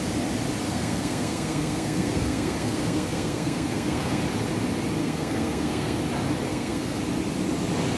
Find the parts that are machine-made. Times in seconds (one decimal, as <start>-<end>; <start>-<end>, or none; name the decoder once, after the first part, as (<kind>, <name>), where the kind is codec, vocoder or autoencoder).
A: 0.7-4.2 (codec, SNAC); 5.0-6.0; 6.5-7.0